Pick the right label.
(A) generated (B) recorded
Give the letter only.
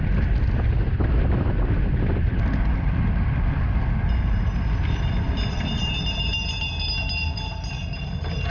B